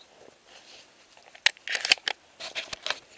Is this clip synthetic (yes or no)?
no